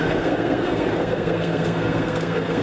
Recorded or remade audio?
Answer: remade